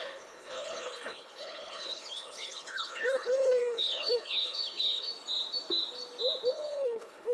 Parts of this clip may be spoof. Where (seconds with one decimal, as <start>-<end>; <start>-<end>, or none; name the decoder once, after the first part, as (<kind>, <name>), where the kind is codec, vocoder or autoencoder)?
0.0-5.1 (codec, HILCodec); 6.5-7.3

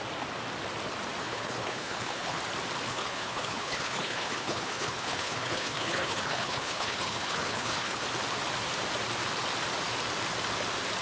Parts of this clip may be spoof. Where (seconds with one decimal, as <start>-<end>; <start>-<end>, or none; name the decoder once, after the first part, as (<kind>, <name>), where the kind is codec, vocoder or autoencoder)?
1.2-2.4 (codec, HILCodec); 2.9-8.0

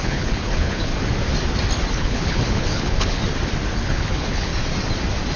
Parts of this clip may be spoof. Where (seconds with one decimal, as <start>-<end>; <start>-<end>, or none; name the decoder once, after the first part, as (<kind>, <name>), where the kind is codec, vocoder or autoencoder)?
0.0-0.9 (codec, HILCodec); 1.9-3.2; 3.8-4.5

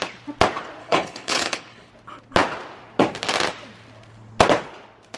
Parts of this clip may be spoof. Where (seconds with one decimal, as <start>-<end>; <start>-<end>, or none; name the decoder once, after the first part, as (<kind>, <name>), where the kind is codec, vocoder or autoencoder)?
0.8-1.9 (codec, HILCodec)

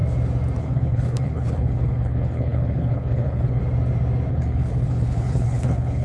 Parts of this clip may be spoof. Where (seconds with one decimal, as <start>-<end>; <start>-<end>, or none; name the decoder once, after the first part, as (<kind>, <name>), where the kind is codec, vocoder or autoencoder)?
0.6-3.6 (codec, HILCodec); 4.3-6.0

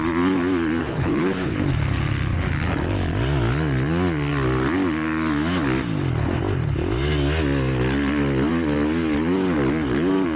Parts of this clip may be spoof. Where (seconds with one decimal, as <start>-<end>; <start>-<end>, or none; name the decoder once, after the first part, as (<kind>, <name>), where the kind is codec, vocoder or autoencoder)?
0.8-1.7 (codec, HILCodec)

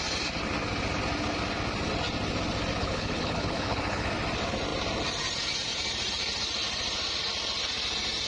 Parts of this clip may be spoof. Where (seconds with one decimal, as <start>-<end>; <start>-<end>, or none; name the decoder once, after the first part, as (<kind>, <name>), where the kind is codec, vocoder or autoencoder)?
2.8-4.1 (codec, HILCodec)